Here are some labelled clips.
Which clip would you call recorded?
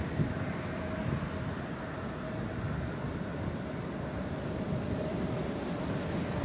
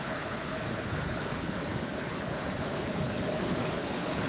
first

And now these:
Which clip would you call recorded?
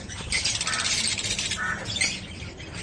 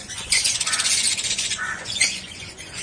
first